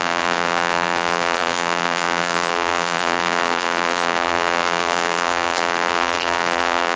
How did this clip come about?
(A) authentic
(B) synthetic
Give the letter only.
B